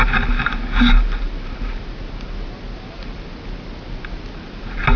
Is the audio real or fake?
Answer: real